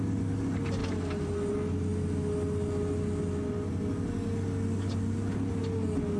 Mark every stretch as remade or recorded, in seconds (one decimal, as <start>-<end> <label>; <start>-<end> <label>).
0.0-6.2 recorded